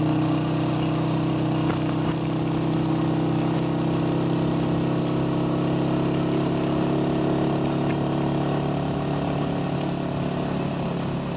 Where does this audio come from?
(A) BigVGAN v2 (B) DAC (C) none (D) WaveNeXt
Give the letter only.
C